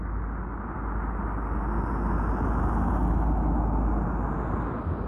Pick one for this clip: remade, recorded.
recorded